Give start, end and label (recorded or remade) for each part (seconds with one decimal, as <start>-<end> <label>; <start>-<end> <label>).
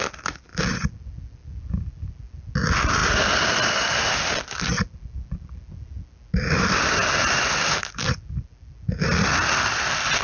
0.0-10.2 recorded